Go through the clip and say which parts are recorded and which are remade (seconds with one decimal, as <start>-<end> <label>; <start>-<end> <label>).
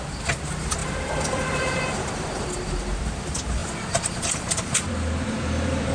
0.0-0.8 recorded; 0.8-2.4 remade; 2.4-3.6 recorded; 3.6-5.9 remade